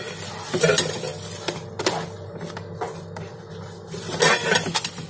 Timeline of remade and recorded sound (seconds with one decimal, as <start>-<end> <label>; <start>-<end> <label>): 0.0-5.1 recorded